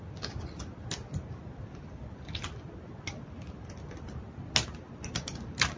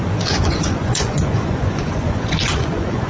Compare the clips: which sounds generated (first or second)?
second